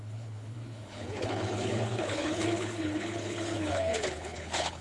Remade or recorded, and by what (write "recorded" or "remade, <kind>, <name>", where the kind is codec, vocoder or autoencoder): remade, codec, HILCodec